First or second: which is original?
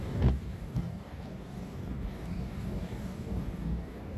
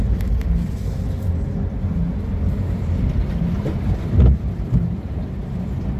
second